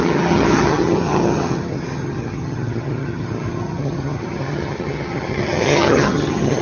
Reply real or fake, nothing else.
fake